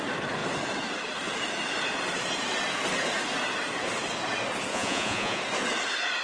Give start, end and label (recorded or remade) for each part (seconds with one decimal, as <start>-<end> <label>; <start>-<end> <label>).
0.0-4.7 recorded; 4.7-5.4 remade; 5.4-6.2 recorded